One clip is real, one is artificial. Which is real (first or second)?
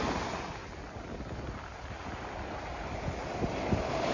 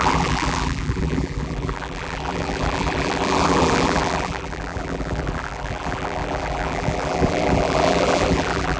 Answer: first